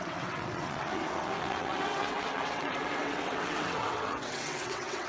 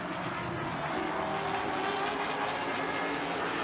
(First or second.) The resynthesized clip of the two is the first